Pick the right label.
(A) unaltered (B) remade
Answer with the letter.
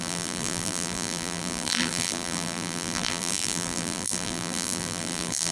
B